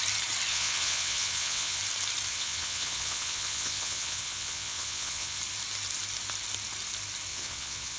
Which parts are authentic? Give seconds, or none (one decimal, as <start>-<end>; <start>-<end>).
0.0-0.5; 1.8-2.3; 5.4-7.3